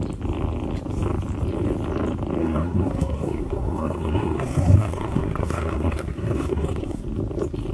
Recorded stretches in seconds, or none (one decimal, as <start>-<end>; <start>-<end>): 0.0-2.4; 7.0-7.7